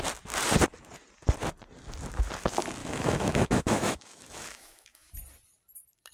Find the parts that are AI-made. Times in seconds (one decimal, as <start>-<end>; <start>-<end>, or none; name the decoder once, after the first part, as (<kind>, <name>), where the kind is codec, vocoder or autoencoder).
2.8-5.1 (autoencoder, DAC-VAE)